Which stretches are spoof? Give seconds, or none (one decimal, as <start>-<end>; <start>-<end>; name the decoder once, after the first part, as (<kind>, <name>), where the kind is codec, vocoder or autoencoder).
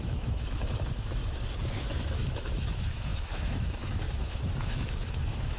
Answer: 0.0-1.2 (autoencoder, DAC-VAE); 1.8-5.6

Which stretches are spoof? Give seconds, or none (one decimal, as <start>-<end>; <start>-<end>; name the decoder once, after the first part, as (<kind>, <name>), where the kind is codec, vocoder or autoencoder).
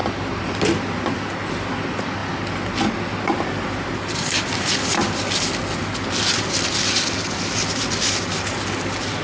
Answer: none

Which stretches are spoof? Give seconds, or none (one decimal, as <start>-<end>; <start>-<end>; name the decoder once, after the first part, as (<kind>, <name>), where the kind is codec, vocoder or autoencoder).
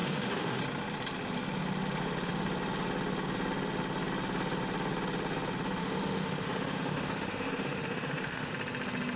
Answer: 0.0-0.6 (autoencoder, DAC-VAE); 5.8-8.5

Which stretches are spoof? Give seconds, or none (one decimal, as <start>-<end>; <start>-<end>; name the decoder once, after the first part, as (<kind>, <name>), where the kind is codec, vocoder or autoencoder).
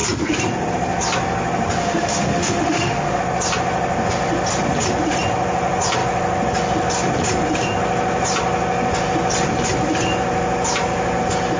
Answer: 1.8-3.2 (autoencoder, DAC-VAE)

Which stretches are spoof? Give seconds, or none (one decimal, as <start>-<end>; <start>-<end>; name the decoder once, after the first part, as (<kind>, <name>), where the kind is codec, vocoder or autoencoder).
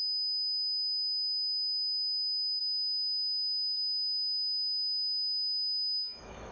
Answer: 2.6-6.5 (autoencoder, DAC-VAE)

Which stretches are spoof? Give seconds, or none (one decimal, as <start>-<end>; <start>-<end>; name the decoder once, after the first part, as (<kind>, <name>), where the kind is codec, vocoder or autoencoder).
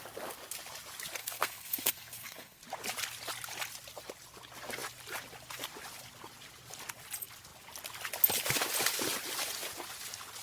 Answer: 1.2-2.6 (codec, SNAC)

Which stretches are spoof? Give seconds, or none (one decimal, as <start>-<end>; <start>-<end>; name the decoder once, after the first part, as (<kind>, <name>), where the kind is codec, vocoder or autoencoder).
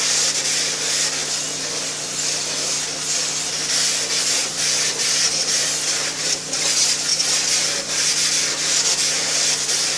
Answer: none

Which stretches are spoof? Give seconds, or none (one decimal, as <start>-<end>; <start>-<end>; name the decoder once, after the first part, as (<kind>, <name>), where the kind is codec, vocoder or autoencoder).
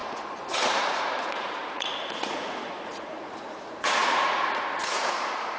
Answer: 0.0-5.6 (vocoder, Vocos)